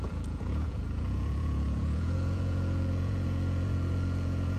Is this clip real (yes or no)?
no